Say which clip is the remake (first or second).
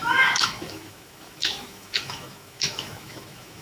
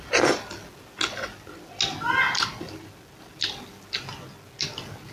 first